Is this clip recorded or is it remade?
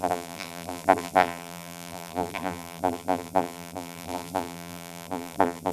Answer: remade